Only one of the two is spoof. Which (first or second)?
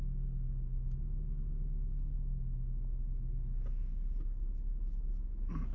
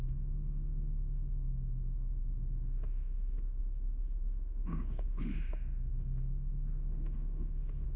second